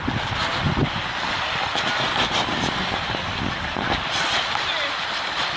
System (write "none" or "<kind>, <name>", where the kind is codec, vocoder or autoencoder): none